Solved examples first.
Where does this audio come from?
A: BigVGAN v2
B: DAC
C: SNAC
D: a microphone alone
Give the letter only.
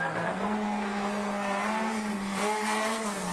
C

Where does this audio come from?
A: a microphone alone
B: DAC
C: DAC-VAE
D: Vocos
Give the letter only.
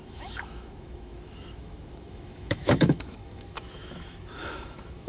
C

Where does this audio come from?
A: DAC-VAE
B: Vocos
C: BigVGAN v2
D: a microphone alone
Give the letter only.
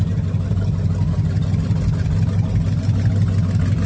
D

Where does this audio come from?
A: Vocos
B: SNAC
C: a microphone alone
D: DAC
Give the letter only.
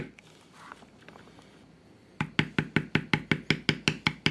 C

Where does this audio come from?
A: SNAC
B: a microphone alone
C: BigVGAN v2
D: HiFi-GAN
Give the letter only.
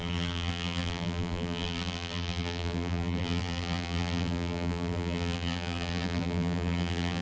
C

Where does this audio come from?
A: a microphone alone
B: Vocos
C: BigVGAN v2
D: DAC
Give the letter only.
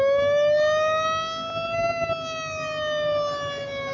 A